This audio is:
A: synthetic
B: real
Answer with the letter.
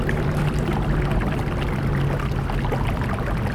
B